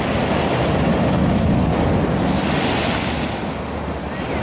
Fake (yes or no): no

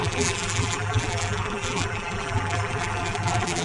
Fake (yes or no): yes